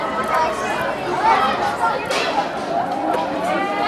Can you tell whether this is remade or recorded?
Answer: recorded